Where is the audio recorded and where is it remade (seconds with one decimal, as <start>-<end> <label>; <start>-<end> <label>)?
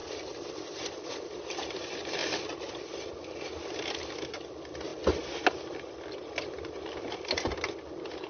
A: 0.0-8.3 recorded